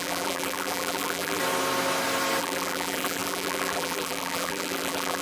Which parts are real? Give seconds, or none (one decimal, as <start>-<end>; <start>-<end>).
1.4-2.4